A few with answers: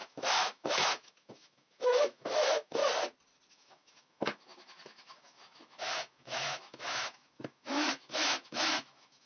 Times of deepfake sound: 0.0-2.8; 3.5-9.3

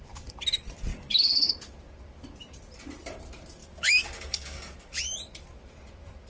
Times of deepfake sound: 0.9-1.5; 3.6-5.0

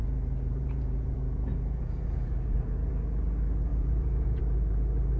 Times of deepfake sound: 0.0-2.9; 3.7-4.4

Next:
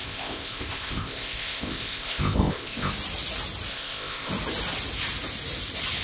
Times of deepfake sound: 0.0-2.9; 3.7-4.3

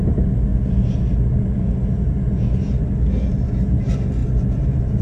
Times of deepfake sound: none

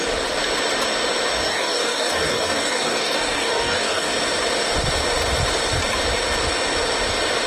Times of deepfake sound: 1.3-4.1

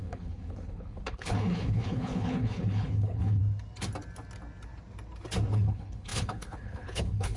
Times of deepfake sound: 0.0-3.4; 5.5-7.4

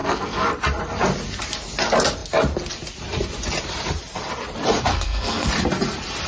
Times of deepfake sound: 0.0-0.5; 4.9-5.5